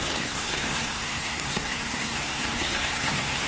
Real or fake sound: fake